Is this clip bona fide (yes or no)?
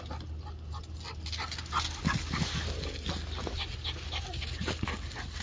yes